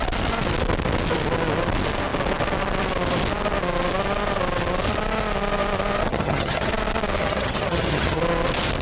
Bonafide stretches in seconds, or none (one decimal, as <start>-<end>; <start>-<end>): 0.0-6.1; 6.7-7.2; 8.2-8.8